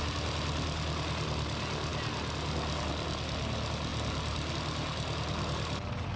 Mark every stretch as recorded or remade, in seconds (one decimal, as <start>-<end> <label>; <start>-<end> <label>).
0.0-6.2 recorded